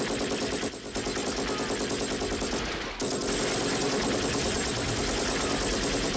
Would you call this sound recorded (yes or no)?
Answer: yes